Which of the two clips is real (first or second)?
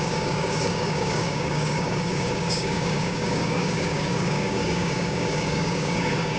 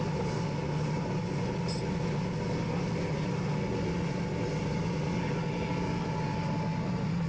second